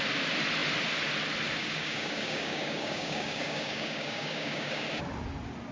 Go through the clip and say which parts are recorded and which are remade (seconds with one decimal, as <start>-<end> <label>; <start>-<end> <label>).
0.0-1.6 recorded; 1.6-5.0 remade; 5.0-5.7 recorded